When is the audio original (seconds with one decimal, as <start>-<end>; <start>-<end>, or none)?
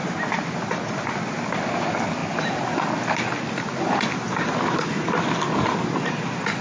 0.0-6.6